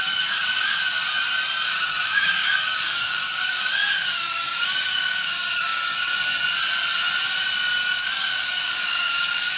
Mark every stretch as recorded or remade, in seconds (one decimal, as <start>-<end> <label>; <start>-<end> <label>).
0.0-0.8 remade; 0.8-1.7 recorded; 1.7-5.8 remade; 5.8-8.0 recorded; 8.0-9.6 remade